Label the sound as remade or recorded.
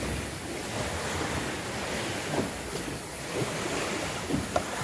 recorded